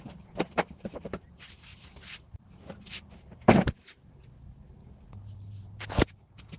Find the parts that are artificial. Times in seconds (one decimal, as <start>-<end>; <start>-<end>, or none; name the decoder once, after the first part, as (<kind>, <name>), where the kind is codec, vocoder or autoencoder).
0.0-4.8 (vocoder, BigVGAN v2); 5.3-6.6